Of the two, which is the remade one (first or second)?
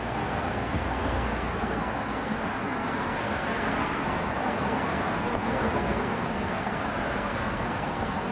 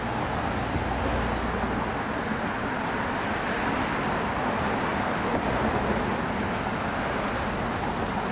first